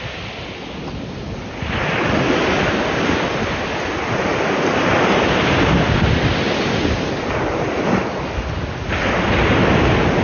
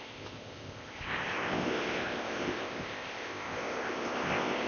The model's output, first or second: second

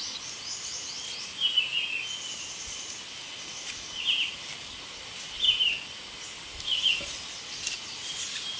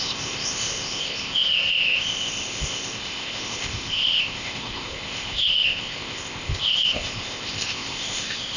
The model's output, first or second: second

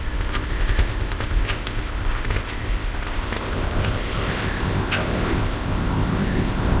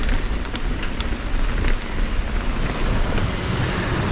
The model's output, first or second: first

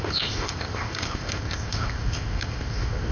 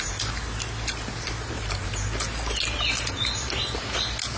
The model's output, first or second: first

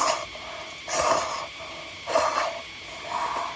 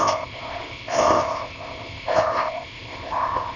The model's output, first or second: second